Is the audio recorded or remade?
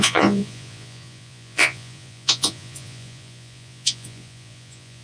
remade